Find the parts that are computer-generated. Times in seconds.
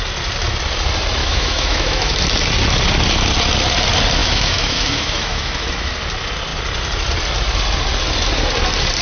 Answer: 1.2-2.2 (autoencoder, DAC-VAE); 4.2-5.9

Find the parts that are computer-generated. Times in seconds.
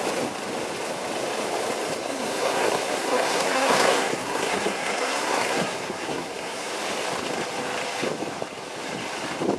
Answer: 2.0-6.7 (codec, SNAC)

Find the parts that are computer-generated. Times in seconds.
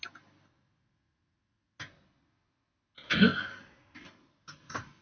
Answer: none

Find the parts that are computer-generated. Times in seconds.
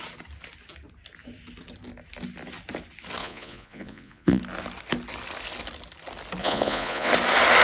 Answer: 3.2-4.4 (vocoder, Vocos); 6.4-7.1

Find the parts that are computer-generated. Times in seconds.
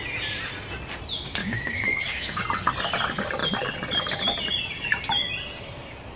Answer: 1.4-2.4 (codec, DAC)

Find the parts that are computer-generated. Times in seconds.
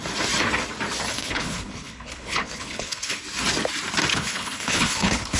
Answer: 1.1-3.2 (codec, HILCodec); 4.1-5.4